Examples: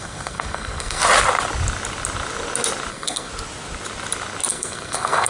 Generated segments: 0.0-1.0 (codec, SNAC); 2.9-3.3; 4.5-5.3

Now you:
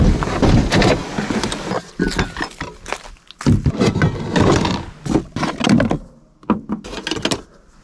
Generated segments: none

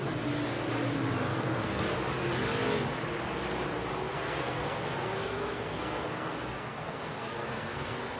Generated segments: 1.3-1.8 (codec, SNAC); 4.1-8.2

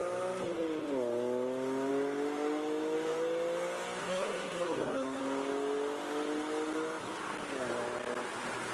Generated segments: 4.0-5.2 (codec, SNAC)

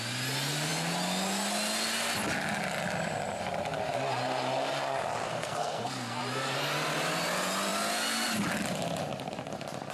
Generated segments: 5.2-6.2 (codec, SNAC)